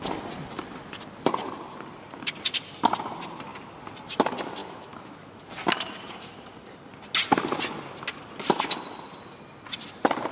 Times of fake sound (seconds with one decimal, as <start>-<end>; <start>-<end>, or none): 4.6-5.5